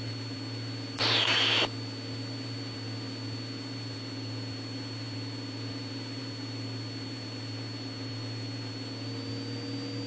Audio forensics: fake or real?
real